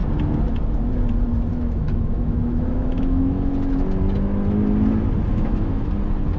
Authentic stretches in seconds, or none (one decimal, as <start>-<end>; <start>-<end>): 0.0-1.5; 3.5-5.3; 5.9-6.4